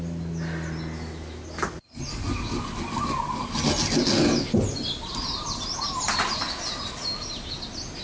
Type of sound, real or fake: real